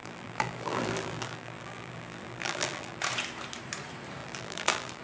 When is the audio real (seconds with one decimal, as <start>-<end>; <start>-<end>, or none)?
3.0-4.2